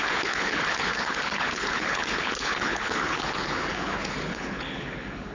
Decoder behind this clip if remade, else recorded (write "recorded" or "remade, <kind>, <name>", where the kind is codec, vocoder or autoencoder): remade, codec, HILCodec